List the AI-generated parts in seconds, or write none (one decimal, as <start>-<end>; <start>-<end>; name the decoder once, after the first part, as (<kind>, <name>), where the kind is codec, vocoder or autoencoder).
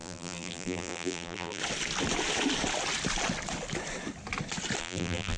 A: 0.0-1.6 (vocoder, BigVGAN v2); 4.8-5.4